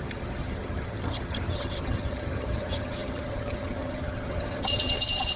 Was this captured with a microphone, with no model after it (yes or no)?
no